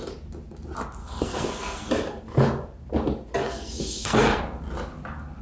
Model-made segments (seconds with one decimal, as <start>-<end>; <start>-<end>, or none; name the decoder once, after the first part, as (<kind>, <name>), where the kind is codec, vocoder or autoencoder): 1.0-1.9 (codec, SNAC); 3.4-4.4